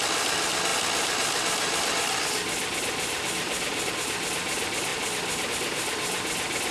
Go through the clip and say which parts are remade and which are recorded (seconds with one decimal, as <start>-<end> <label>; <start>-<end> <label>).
0.0-6.7 recorded